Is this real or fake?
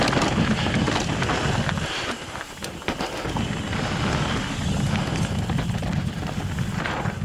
real